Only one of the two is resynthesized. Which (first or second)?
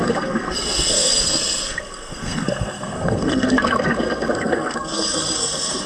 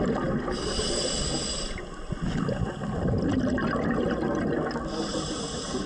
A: first